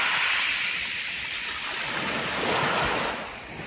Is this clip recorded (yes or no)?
yes